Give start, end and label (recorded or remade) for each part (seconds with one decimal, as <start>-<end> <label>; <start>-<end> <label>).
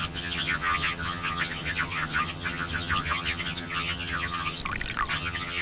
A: 0.0-4.6 remade; 4.6-5.1 recorded; 5.1-5.6 remade